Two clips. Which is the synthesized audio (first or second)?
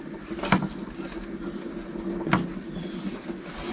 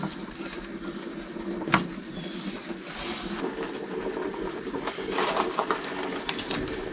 second